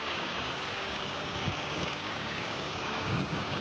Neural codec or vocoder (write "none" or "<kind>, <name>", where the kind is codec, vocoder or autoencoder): codec, DAC